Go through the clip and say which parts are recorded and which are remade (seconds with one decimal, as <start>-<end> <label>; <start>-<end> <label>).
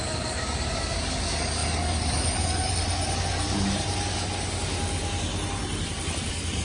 0.0-5.3 remade; 5.3-5.8 recorded; 5.8-6.6 remade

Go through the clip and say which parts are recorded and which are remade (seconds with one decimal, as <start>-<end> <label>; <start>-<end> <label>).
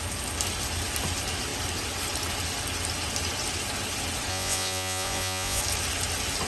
0.0-4.3 recorded; 4.3-5.6 remade; 5.6-6.5 recorded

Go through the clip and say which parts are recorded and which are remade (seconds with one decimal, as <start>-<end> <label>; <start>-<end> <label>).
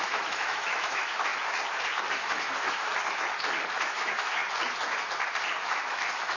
0.0-1.3 remade; 1.3-2.1 recorded; 2.1-2.9 remade; 2.9-3.8 recorded; 3.8-4.4 remade; 4.4-5.6 recorded; 5.6-6.4 remade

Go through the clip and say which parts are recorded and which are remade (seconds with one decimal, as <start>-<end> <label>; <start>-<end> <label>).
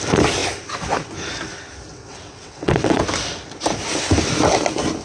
0.0-1.9 recorded; 1.9-3.0 remade; 3.0-5.0 recorded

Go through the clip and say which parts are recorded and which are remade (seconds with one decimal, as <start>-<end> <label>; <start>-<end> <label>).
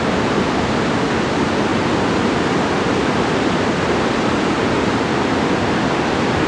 0.0-6.5 recorded